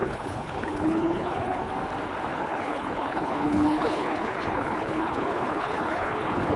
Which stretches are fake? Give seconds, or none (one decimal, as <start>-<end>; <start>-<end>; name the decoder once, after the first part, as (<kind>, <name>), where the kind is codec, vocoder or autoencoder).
0.0-1.7 (codec, HILCodec); 2.3-6.6